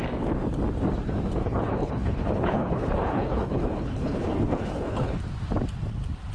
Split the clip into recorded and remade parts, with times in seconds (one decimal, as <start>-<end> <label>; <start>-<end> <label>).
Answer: 0.0-1.4 recorded; 1.4-5.2 remade; 5.2-6.3 recorded